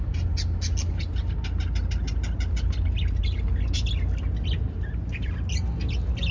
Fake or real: real